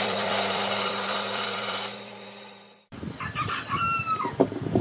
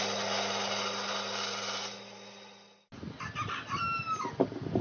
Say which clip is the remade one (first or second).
first